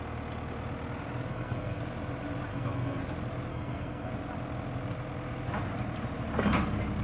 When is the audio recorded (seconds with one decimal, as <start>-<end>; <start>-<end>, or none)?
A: 0.0-1.3; 1.8-2.5; 3.0-3.5; 4.1-7.0